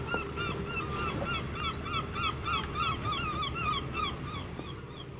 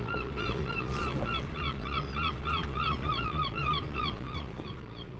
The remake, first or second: second